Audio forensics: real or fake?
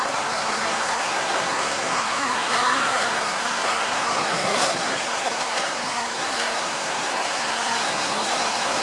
fake